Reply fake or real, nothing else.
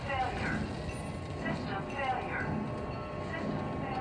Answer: real